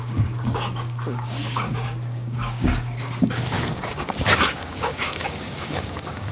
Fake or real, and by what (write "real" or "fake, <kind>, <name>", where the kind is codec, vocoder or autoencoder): fake, codec, DAC